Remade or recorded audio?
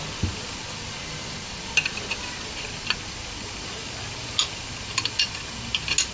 recorded